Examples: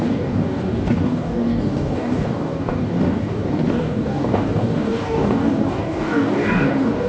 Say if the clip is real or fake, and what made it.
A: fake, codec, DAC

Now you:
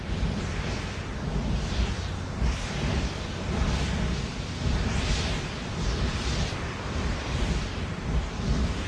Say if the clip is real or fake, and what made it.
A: fake, vocoder, BigVGAN v2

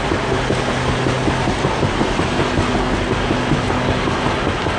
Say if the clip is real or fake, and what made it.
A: real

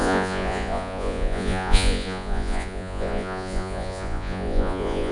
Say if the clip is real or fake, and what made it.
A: fake, vocoder, Vocos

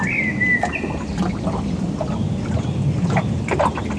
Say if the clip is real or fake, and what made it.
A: real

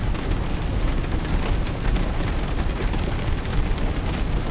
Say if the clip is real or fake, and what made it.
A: real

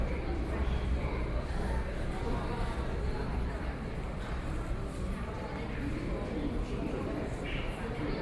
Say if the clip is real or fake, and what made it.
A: fake, vocoder, BigVGAN v2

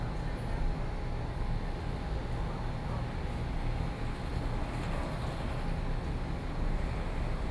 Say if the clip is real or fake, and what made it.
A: real